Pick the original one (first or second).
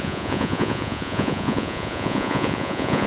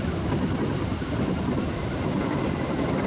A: second